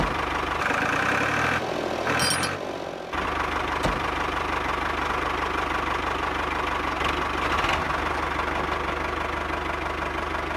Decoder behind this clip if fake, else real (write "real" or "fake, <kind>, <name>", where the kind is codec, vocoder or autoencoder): real